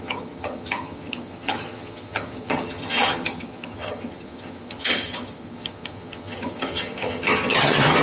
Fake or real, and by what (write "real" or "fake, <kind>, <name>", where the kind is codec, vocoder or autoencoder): fake, vocoder, HiFi-GAN